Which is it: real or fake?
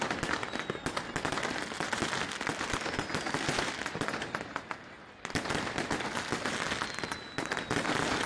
real